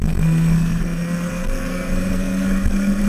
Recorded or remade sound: remade